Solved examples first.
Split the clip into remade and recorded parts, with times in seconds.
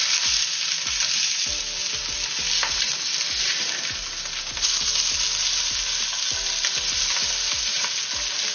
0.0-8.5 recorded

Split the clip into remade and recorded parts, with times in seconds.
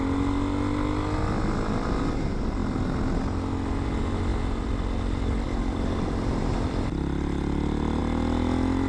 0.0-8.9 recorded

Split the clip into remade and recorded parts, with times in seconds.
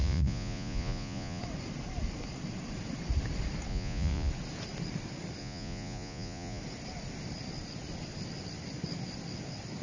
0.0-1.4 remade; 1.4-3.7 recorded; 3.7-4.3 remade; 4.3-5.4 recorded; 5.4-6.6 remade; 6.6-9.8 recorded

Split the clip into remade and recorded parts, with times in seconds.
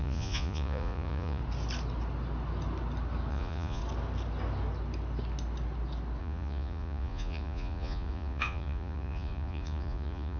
0.0-1.4 remade; 1.4-3.3 recorded; 3.3-3.8 remade; 3.8-6.2 recorded; 6.2-10.4 remade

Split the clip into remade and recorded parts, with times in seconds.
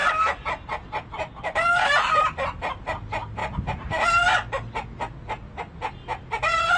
0.0-6.8 recorded